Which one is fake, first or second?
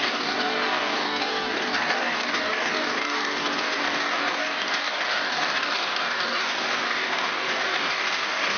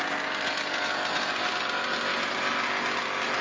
first